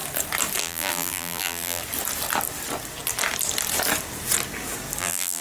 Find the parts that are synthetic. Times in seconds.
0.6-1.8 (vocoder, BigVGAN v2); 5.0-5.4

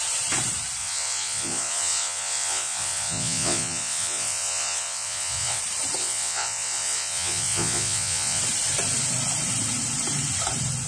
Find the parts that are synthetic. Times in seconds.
0.8-5.6 (vocoder, Vocos); 6.0-8.4

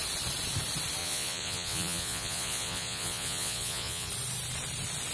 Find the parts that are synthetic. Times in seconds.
1.0-4.1 (vocoder, Vocos)

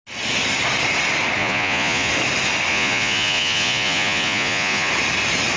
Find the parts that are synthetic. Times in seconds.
1.4-2.1 (vocoder, Vocos); 2.7-4.9

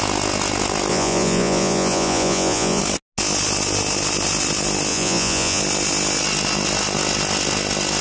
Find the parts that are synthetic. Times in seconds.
0.9-2.8 (vocoder, Vocos); 4.9-5.6